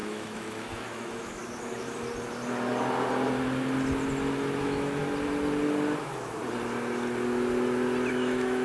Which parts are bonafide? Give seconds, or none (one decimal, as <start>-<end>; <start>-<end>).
1.4-4.6; 5.0-6.0; 6.4-8.1